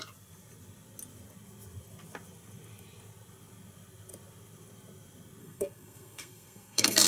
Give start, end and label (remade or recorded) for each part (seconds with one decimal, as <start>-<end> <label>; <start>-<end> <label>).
0.0-5.4 recorded; 5.4-7.1 remade